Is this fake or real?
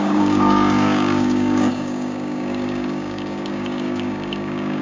fake